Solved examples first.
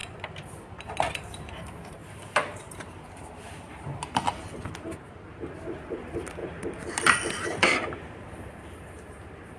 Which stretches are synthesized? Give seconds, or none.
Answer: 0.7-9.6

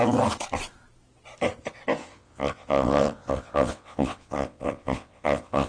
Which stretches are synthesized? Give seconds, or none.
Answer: 2.0-5.7

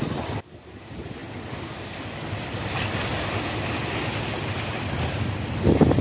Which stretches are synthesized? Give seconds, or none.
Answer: none

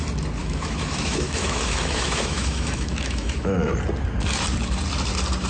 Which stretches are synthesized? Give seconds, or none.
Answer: 0.4-3.7

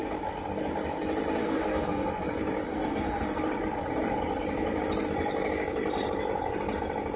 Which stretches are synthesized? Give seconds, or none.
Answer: 1.4-2.1; 2.7-3.4